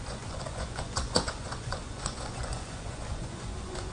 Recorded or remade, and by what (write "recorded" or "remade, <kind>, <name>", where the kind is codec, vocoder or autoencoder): remade, vocoder, Vocos